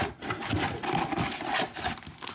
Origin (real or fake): real